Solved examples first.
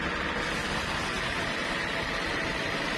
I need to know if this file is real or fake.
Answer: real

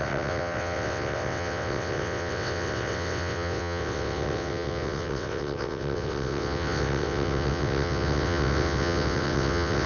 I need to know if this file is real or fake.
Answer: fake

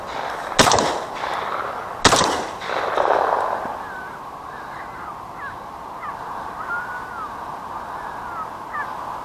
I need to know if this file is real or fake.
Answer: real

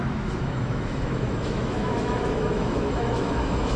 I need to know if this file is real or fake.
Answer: fake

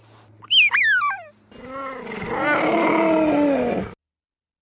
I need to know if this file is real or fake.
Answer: real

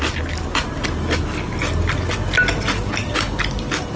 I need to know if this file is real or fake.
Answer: real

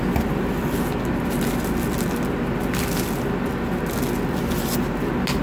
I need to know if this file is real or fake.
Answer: real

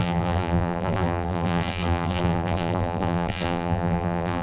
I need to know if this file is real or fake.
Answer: fake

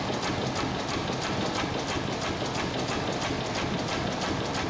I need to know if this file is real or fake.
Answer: real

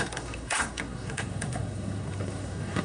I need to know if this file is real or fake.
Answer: fake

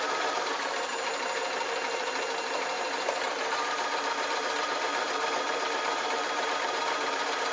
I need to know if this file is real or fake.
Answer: fake